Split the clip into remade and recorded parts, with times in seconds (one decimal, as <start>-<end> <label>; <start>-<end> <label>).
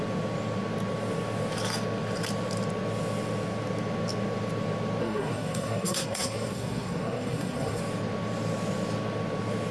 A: 0.0-5.0 recorded; 5.0-7.8 remade; 7.8-9.7 recorded